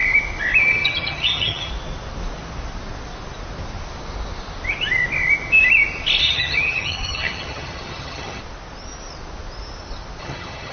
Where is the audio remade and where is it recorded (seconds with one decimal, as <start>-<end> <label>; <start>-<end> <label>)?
0.0-0.6 recorded; 0.6-1.7 remade; 1.7-6.2 recorded; 6.2-8.4 remade; 8.4-10.2 recorded; 10.2-10.7 remade